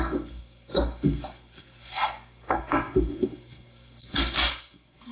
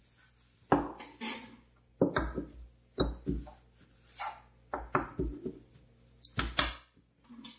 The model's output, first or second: first